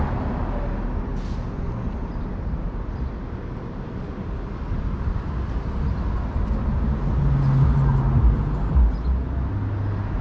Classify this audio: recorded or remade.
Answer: recorded